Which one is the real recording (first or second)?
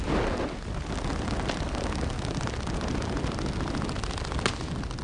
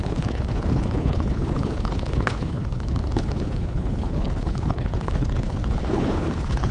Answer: first